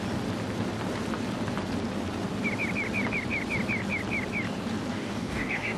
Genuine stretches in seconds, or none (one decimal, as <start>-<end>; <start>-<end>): 0.0-4.9